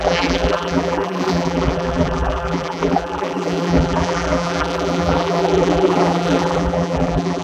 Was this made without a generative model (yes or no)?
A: no